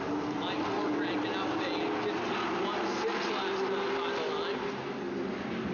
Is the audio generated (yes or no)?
no